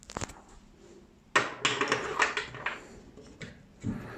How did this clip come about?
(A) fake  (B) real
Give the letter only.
B